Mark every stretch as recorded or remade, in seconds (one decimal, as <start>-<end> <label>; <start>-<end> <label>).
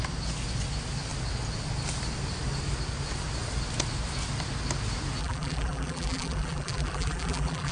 0.0-5.2 recorded; 5.2-7.7 remade